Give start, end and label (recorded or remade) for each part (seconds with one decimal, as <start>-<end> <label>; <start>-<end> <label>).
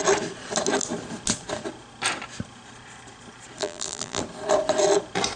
0.0-3.6 recorded; 3.6-4.2 remade; 4.2-5.4 recorded